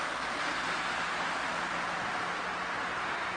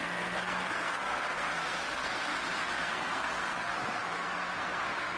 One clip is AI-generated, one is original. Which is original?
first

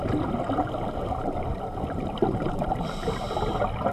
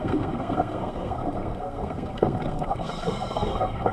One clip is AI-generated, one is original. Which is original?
first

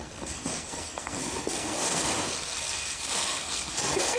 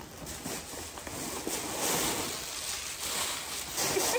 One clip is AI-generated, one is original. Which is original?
second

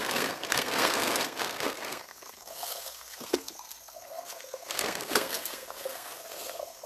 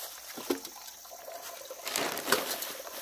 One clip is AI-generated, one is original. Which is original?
second